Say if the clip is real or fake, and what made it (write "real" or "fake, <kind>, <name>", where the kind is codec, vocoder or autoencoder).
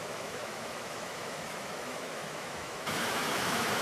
fake, autoencoder, DAC-VAE